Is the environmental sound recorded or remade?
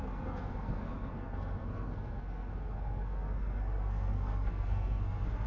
remade